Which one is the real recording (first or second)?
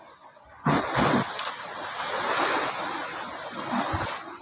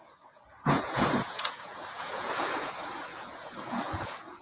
first